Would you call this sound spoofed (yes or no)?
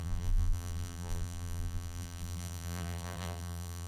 yes